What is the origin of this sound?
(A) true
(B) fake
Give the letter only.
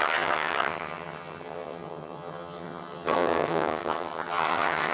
B